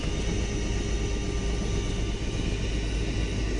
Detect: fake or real real